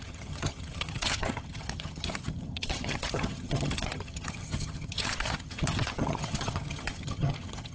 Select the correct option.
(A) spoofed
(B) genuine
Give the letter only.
A